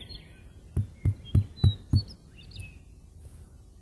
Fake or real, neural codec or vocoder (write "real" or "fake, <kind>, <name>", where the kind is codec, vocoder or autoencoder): real